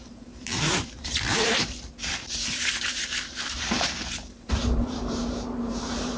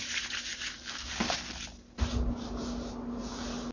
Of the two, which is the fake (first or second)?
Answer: first